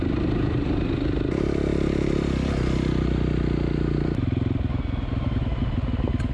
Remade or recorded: recorded